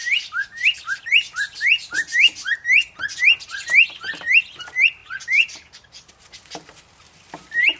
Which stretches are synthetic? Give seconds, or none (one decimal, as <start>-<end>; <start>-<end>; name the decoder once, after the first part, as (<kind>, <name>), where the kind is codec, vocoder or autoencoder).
none